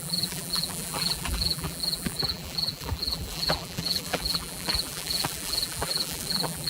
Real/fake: fake